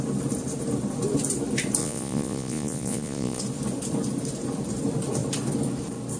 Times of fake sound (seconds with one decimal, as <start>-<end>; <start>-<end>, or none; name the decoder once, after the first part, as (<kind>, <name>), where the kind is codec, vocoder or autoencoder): 1.8-3.4 (vocoder, Vocos)